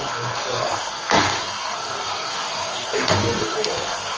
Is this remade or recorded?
remade